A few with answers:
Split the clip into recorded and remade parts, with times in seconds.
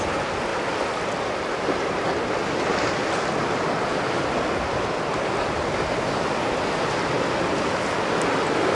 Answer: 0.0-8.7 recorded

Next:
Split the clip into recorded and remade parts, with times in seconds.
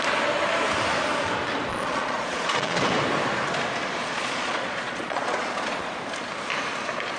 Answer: 0.0-1.7 recorded; 1.7-2.8 remade; 2.8-4.0 recorded; 4.0-5.9 remade; 5.9-7.2 recorded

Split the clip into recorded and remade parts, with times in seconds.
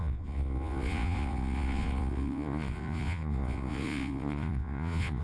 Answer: 0.0-5.2 remade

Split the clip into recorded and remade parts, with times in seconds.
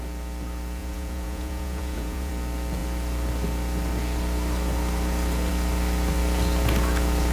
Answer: 0.0-0.8 recorded; 0.8-2.3 remade; 2.3-7.3 recorded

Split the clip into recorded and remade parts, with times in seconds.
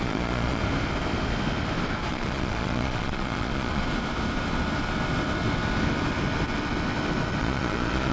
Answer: 0.0-0.6 remade; 0.6-2.1 recorded; 2.1-3.8 remade; 3.8-7.4 recorded; 7.4-8.1 remade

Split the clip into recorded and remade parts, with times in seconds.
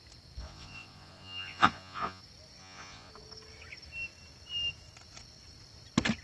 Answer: 0.0-0.4 recorded; 0.4-2.2 remade; 2.2-2.6 recorded; 2.6-3.1 remade; 3.1-6.2 recorded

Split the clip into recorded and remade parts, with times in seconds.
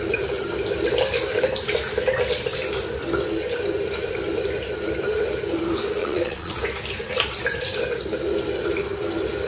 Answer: 0.0-6.0 recorded; 6.0-6.6 remade; 6.6-9.5 recorded